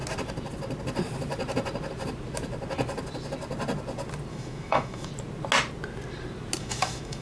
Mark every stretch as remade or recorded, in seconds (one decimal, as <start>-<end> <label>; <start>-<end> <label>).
0.0-4.3 recorded; 4.3-5.1 remade; 5.1-6.6 recorded; 6.6-7.2 remade